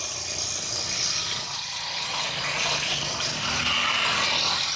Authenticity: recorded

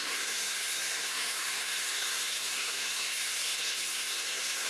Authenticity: remade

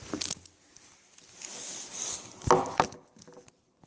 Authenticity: recorded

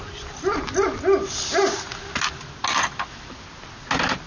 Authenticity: recorded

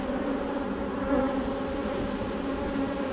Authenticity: recorded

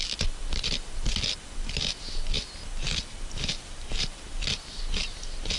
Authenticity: recorded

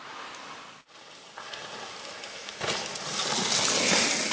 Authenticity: recorded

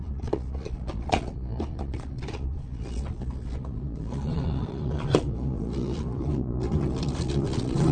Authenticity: remade